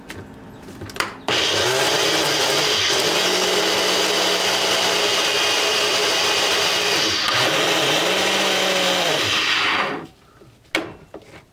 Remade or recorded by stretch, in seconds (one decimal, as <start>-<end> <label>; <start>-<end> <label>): 0.0-5.7 recorded; 5.7-6.7 remade; 6.7-11.5 recorded